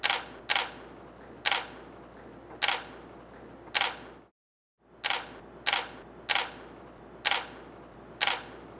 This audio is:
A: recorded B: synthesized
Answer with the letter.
A